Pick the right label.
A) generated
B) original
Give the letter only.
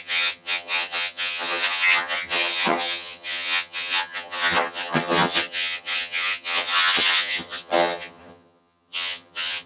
A